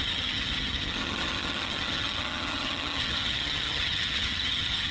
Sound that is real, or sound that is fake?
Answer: fake